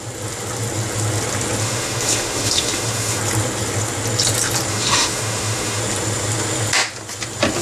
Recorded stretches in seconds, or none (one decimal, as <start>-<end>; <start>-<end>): 0.0-1.6; 3.2-4.7; 5.8-7.6